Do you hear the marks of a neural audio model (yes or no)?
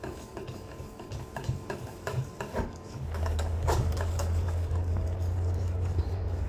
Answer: yes